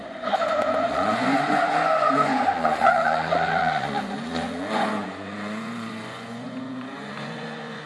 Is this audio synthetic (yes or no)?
yes